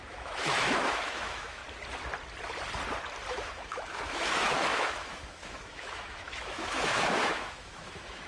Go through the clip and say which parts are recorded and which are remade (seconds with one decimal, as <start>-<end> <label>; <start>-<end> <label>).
0.0-1.6 remade; 1.6-3.3 recorded; 3.3-8.3 remade